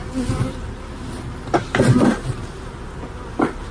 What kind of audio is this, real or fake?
real